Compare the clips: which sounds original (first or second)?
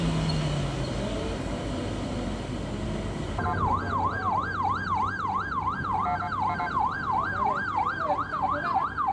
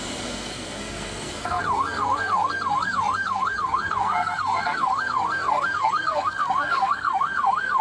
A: first